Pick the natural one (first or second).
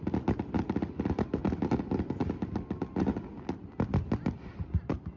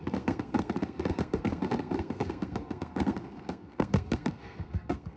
first